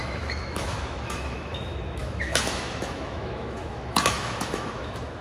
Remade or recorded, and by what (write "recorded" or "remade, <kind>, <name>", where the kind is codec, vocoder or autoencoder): remade, autoencoder, DAC-VAE